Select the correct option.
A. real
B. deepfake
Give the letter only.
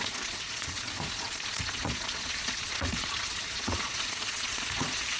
B